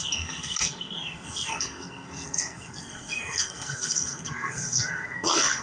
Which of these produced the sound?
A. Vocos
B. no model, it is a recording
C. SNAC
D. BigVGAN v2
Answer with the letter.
C